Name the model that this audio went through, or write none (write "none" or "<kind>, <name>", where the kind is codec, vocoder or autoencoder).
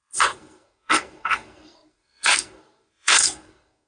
codec, SNAC